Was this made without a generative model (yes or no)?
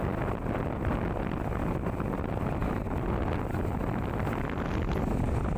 yes